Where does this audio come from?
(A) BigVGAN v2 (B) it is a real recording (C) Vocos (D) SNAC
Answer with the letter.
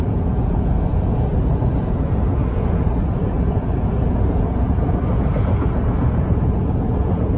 C